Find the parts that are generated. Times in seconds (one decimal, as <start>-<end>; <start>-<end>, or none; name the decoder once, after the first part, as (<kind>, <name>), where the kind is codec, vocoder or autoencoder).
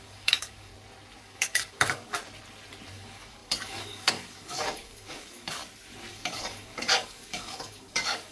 0.0-0.7 (codec, DAC); 1.2-2.2; 2.9-5.6; 6.1-8.3